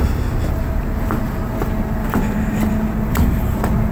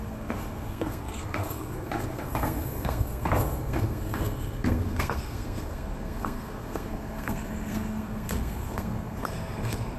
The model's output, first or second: second